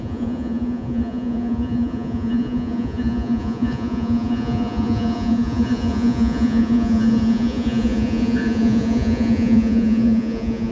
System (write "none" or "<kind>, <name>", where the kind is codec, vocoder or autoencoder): vocoder, Vocos